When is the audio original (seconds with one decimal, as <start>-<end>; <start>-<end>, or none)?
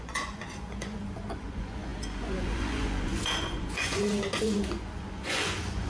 none